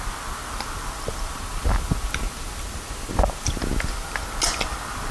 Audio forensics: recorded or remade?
recorded